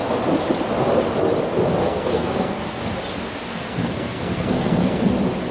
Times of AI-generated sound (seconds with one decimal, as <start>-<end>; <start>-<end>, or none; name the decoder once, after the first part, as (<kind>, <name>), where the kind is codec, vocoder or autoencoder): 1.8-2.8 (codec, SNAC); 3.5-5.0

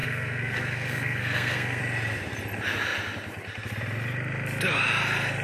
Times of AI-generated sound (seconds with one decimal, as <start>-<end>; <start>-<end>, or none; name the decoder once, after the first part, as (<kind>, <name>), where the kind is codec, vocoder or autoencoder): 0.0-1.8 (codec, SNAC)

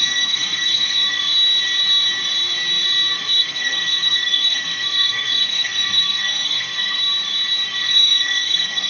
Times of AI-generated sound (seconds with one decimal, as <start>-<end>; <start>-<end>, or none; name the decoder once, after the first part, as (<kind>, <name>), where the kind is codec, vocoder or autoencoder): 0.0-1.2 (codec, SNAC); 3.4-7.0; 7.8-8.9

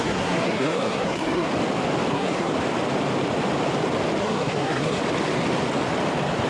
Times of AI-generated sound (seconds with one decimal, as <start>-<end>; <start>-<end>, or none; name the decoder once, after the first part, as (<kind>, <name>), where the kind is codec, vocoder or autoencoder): 0.0-1.5 (codec, SNAC); 2.1-2.5; 4.2-5.0